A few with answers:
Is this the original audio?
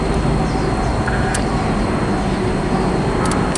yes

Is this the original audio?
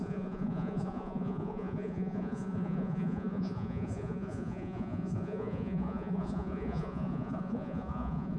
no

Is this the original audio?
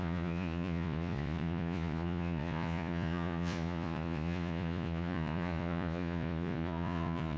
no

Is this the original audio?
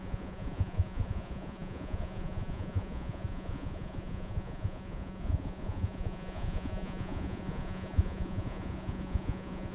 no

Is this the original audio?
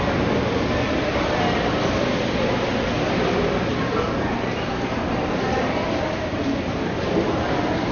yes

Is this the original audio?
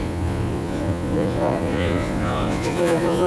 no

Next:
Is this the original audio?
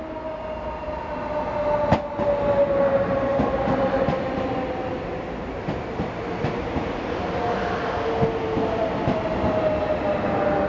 yes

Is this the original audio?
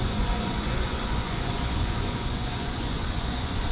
no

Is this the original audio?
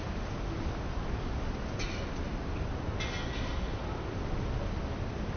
yes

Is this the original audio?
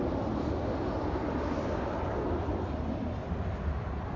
yes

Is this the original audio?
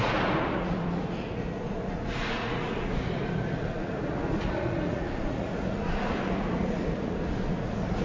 no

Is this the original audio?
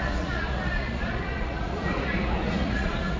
no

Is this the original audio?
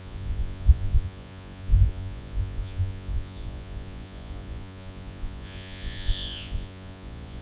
no